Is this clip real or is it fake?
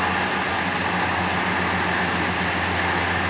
real